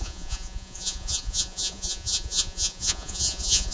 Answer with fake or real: fake